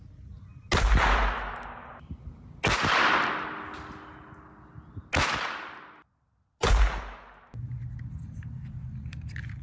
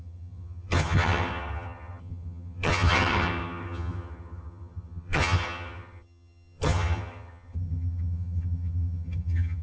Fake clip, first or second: second